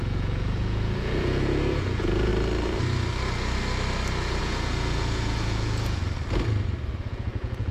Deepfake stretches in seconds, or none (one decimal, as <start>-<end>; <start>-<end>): 0.0-2.3; 4.4-6.0; 7.0-7.7